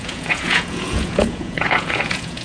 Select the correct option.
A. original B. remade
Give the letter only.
B